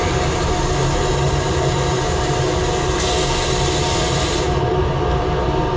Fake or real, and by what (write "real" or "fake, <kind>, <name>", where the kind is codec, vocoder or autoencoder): real